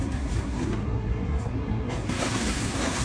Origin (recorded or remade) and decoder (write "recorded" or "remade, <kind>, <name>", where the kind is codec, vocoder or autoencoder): remade, codec, SNAC